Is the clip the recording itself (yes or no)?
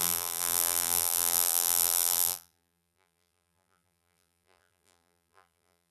no